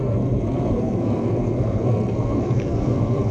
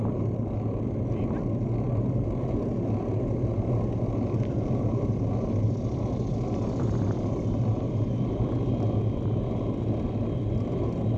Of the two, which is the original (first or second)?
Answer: second